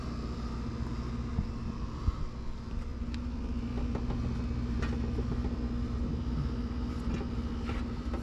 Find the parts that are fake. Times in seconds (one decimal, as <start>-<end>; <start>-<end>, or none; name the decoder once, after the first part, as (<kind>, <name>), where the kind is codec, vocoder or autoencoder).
none